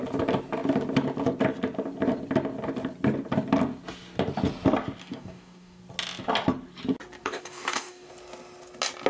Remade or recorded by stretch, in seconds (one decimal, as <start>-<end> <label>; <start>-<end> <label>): 0.0-5.0 recorded; 5.0-5.8 remade; 5.8-7.2 recorded; 7.2-8.1 remade; 8.1-9.1 recorded

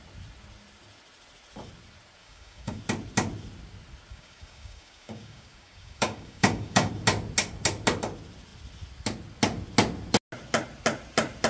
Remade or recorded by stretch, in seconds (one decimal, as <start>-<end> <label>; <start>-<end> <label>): 0.0-2.2 recorded; 2.2-2.8 remade; 2.8-4.1 recorded; 4.1-6.9 remade; 6.9-11.5 recorded

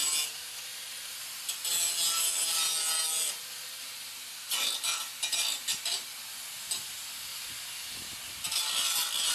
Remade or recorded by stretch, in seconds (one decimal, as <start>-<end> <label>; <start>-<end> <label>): 0.0-9.3 recorded

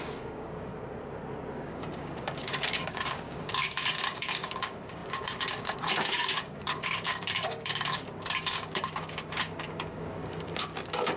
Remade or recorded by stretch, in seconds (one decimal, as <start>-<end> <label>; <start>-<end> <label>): 0.0-0.7 remade; 0.7-1.5 recorded; 1.5-11.2 remade

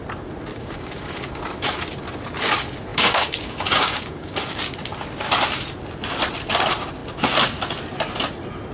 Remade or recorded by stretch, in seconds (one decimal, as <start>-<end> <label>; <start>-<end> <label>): 0.0-0.5 recorded; 0.5-1.4 remade; 1.4-2.9 recorded; 2.9-4.6 remade; 4.6-8.7 recorded